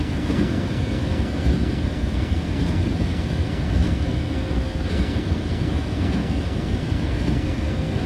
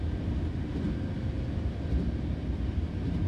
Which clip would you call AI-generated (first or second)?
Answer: first